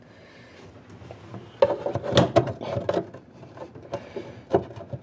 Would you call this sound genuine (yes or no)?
yes